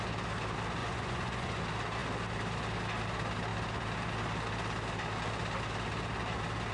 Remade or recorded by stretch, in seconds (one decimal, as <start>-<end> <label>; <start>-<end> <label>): 0.0-0.8 recorded; 0.8-1.6 remade; 1.6-6.7 recorded